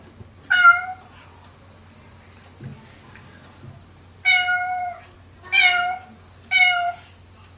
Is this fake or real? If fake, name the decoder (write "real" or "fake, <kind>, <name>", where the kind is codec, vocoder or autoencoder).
real